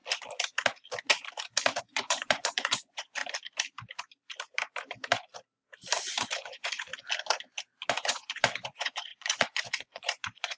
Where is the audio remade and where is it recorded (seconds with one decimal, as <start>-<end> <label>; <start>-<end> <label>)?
0.0-1.8 recorded; 1.8-3.2 remade; 3.2-6.2 recorded; 6.2-6.9 remade; 6.9-7.9 recorded; 7.9-10.6 remade